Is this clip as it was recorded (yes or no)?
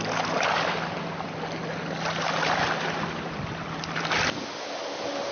yes